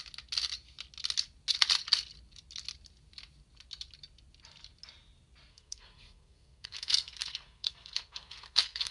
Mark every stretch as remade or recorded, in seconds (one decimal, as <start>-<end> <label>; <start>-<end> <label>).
0.0-5.5 recorded; 5.5-8.9 remade